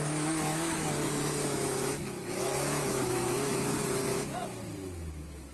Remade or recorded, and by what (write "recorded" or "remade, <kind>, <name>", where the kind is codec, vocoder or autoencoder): remade, autoencoder, DAC-VAE